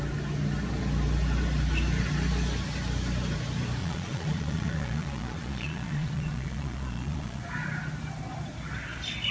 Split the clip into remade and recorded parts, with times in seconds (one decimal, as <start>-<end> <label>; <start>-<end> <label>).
0.0-3.8 recorded; 3.8-7.4 remade; 7.4-9.3 recorded